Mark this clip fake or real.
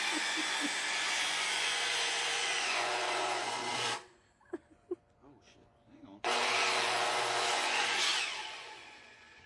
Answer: fake